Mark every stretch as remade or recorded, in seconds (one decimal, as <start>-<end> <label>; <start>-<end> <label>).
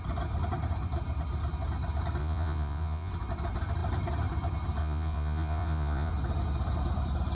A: 0.0-2.2 recorded; 2.2-3.1 remade; 3.1-4.8 recorded; 4.8-6.1 remade; 6.1-7.3 recorded